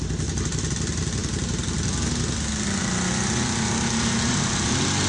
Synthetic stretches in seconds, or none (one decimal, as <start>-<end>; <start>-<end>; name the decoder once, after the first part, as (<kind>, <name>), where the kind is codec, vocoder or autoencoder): none